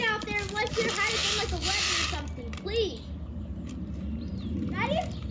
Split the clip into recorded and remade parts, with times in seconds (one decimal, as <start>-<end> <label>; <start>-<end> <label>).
0.0-5.3 recorded